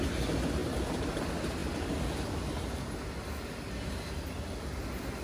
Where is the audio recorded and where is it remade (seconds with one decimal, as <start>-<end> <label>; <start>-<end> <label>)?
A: 0.0-5.2 recorded